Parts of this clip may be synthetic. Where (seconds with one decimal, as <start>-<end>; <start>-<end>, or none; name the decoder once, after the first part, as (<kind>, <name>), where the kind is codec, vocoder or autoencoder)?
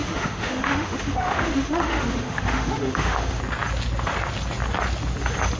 0.0-3.4 (autoencoder, DAC-VAE)